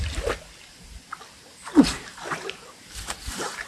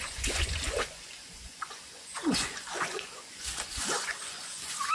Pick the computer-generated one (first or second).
second